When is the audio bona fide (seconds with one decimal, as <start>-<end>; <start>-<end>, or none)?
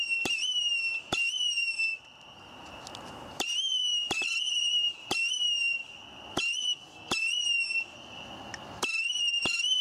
1.7-3.2; 3.8-4.4; 5.8-9.3